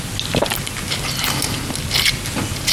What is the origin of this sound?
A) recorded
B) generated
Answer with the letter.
A